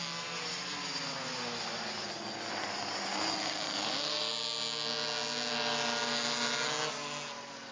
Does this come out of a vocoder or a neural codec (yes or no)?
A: no